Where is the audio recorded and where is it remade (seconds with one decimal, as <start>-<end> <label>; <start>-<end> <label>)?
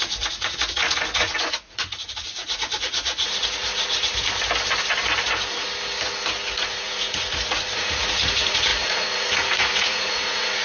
0.0-3.4 remade; 3.4-6.5 recorded; 6.5-10.6 remade